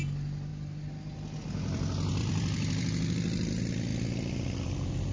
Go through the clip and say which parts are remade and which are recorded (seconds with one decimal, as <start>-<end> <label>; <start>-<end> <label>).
0.0-2.2 recorded; 2.2-3.5 remade; 3.5-3.9 recorded; 3.9-5.1 remade